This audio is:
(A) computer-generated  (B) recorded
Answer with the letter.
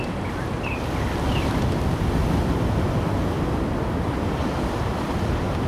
B